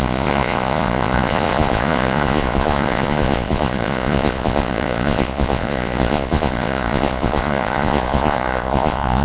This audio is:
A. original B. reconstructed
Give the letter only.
B